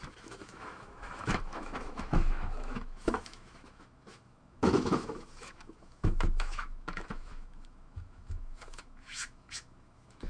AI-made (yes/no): yes